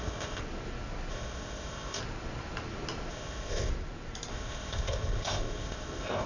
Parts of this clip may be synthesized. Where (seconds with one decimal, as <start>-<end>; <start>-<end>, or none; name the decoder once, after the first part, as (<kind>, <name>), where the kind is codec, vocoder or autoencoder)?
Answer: 0.0-0.4 (codec, ZipCodec); 1.1-2.0; 3.1-3.7; 4.3-6.3